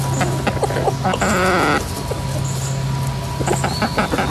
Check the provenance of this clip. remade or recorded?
recorded